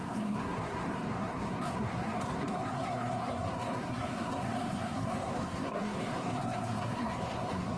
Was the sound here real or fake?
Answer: fake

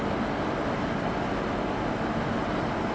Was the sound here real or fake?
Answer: real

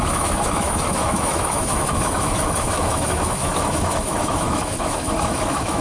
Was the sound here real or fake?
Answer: fake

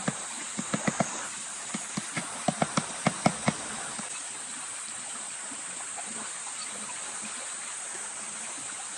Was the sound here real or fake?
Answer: fake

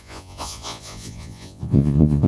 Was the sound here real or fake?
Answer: fake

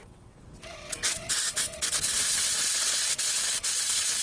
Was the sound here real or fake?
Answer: fake